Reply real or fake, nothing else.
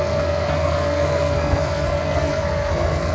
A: fake